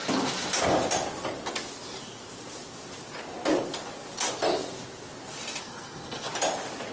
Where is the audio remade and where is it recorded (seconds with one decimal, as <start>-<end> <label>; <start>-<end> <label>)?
0.0-5.6 recorded; 5.6-6.3 remade; 6.3-6.9 recorded